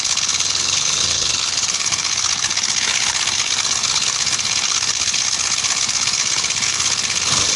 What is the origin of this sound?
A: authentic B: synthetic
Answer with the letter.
B